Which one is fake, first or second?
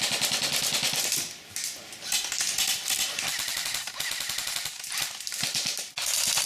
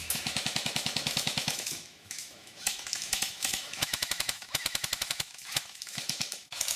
second